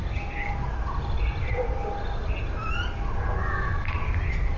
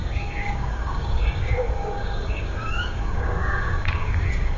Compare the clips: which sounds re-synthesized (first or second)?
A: second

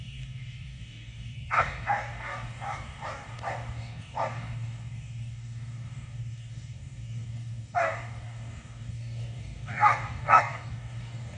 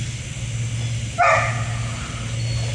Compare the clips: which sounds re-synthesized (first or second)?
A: first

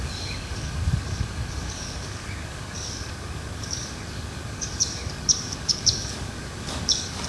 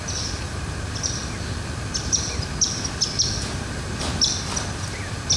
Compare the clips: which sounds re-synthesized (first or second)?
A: first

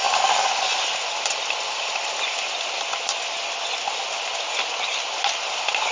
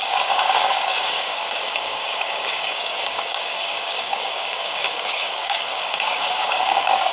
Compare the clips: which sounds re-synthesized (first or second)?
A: second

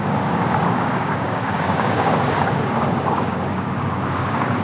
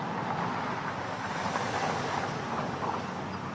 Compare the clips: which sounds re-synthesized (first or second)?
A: first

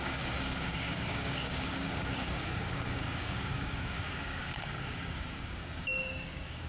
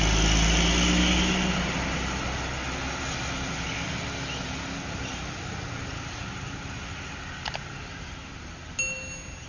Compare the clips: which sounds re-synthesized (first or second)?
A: first